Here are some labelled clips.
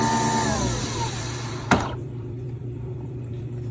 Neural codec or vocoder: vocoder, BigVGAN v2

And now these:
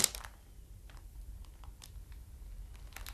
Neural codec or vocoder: none